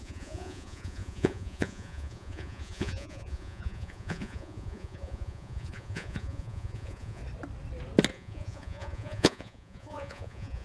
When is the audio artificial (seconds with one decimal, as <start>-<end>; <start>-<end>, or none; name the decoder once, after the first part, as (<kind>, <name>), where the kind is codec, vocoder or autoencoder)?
0.0-7.2 (vocoder, Vocos); 8.1-10.6